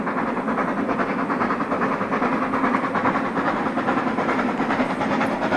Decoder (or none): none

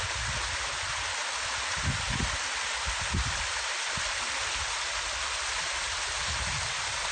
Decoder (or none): none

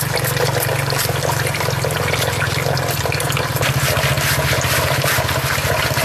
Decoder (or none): none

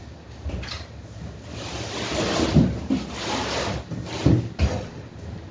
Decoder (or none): none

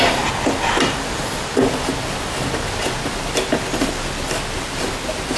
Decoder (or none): none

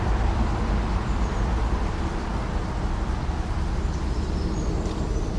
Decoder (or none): none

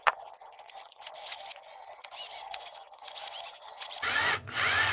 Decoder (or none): vocoder, Vocos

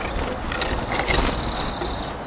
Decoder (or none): none